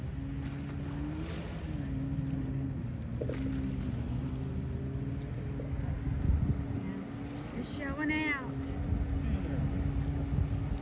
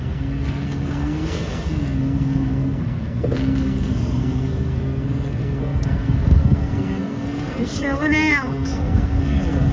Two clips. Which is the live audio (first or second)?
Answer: first